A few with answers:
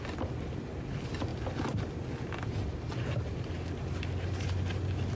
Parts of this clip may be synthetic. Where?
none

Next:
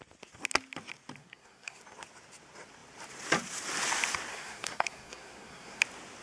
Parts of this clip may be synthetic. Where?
1.2-1.8 (codec, SNAC); 4.3-5.8

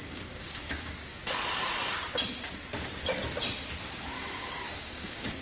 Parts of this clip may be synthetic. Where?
0.0-1.2 (codec, DAC); 3.9-5.4